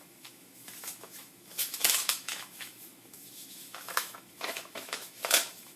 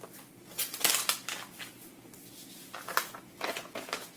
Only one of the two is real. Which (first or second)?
second